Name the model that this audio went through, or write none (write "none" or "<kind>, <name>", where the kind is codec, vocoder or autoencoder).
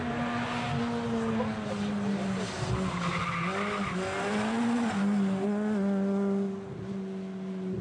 none